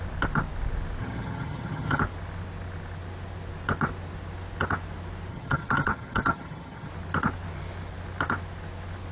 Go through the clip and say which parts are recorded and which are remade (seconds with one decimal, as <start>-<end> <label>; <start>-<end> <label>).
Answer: 0.0-1.0 recorded; 1.0-2.0 remade; 2.0-5.3 recorded; 5.3-6.9 remade; 6.9-9.1 recorded